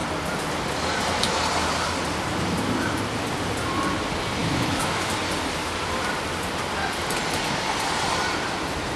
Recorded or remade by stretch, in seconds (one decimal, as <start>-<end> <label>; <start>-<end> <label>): 0.0-4.4 recorded; 4.4-5.1 remade; 5.1-9.0 recorded